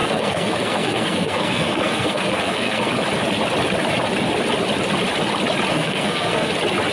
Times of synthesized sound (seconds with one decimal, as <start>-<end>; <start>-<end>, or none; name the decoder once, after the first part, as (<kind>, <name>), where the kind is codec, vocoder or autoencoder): 0.0-2.9 (codec, SNAC); 5.7-6.5